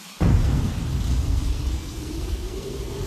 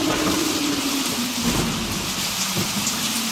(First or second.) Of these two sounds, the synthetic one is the first